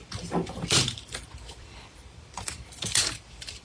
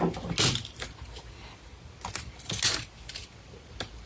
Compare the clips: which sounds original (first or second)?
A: second